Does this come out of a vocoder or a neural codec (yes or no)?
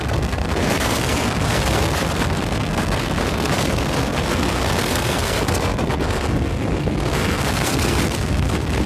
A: yes